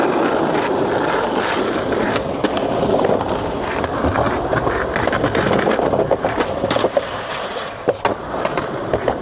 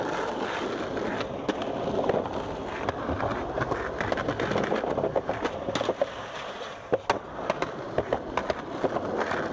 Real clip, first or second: second